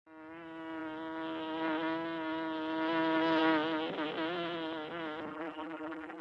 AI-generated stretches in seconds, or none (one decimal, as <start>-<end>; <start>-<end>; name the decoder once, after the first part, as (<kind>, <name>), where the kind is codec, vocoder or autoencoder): 5.3-6.2 (vocoder, BigVGAN v2)